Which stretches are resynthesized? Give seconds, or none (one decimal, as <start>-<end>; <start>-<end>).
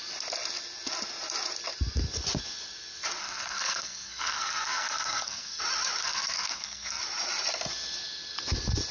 3.2-5.6; 6.0-7.0